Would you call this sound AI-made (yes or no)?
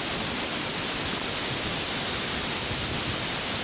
no